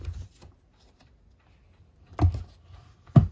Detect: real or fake real